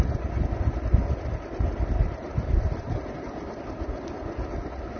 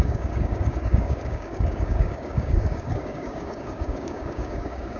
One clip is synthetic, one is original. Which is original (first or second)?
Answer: first